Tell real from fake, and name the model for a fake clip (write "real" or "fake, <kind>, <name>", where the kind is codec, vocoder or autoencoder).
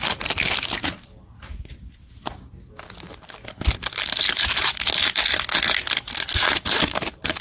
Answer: real